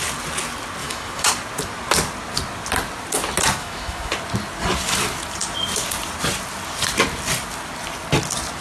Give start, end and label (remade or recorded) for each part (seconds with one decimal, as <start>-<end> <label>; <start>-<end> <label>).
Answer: 0.0-0.8 recorded; 0.8-1.3 remade; 1.3-3.6 recorded; 3.6-4.1 remade; 4.1-8.6 recorded